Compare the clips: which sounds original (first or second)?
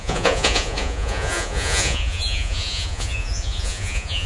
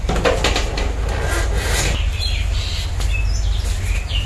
second